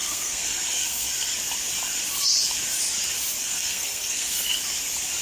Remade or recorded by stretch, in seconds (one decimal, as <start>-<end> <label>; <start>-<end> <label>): 0.0-1.1 remade; 1.1-3.4 recorded; 3.4-4.4 remade; 4.4-5.2 recorded

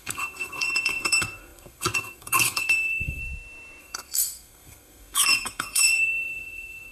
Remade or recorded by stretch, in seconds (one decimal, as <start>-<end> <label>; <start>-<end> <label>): 0.0-3.2 remade; 3.2-3.8 recorded; 3.8-6.9 remade